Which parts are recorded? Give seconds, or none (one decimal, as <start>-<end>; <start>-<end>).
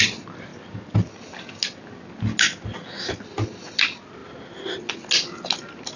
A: 0.0-6.0